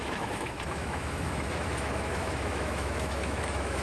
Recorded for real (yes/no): no